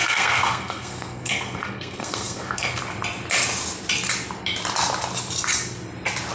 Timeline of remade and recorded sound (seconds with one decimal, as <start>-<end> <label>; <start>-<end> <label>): 0.0-2.8 remade; 2.8-6.3 recorded